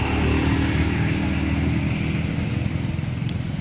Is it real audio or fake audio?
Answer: real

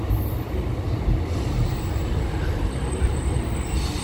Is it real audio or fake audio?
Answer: real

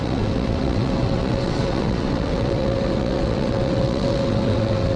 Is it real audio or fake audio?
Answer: fake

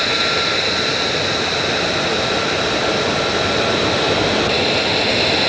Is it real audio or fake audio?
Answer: real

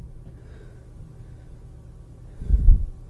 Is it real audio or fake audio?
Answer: real